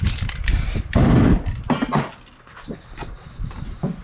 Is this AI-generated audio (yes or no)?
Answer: no